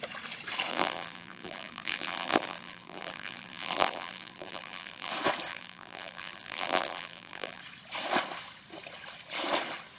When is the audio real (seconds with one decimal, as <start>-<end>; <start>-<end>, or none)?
0.0-0.7; 5.1-5.5; 7.6-10.0

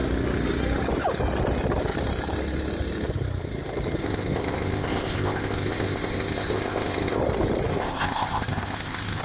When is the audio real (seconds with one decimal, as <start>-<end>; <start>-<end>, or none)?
0.0-4.0; 7.2-7.7